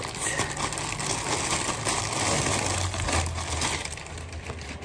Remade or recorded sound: recorded